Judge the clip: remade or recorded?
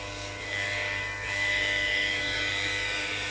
remade